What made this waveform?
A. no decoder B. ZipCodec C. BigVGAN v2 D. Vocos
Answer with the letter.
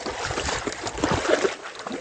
C